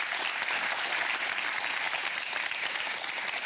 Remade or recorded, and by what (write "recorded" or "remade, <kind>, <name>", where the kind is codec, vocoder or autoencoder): recorded